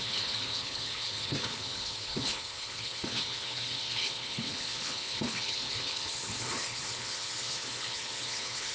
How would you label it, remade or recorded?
remade